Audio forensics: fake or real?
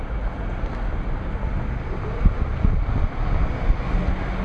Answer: real